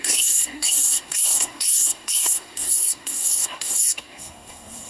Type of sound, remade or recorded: remade